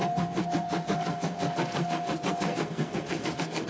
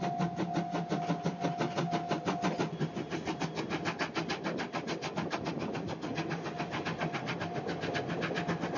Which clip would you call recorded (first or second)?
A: second